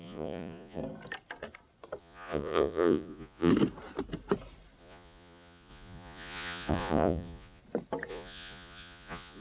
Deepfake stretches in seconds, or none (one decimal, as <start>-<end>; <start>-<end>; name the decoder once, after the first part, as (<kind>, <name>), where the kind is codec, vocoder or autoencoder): 0.0-0.8 (vocoder, Vocos); 2.0-3.5; 4.8-7.6; 8.1-9.4